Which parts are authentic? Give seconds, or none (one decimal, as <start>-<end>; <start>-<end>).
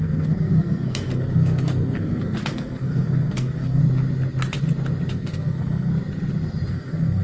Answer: 3.8-5.1; 5.9-6.7